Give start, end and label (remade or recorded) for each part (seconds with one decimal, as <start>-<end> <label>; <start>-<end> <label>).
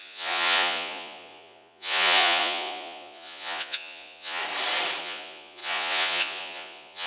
0.0-4.4 remade; 4.4-5.0 recorded; 5.0-7.1 remade